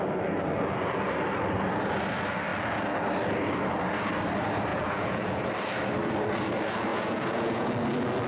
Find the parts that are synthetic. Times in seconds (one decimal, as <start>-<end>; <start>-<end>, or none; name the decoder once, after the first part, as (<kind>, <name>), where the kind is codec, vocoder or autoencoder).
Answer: 4.7-5.5 (vocoder, Vocos); 6.9-7.7